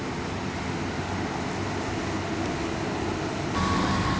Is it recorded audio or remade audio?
recorded